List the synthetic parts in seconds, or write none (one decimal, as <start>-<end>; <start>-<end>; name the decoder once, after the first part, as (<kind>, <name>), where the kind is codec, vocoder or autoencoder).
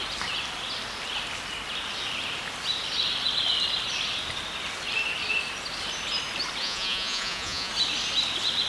6.6-7.7 (vocoder, Vocos)